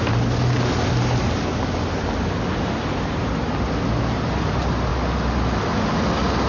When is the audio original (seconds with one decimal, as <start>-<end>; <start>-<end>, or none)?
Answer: 0.0-6.5